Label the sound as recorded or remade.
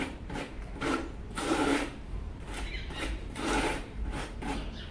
remade